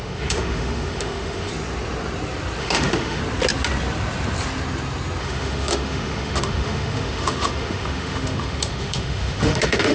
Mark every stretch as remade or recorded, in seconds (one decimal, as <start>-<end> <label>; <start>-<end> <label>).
0.0-1.5 remade; 1.5-2.6 recorded; 2.6-3.2 remade; 3.2-5.2 recorded; 5.2-9.9 remade